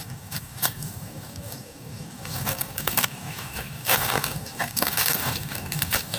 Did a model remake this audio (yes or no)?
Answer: yes